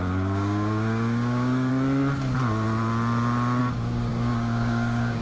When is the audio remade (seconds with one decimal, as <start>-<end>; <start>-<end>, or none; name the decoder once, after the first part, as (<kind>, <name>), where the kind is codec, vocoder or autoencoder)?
0.0-1.7 (codec, DAC); 3.6-5.2